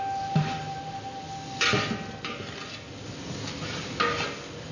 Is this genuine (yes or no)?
yes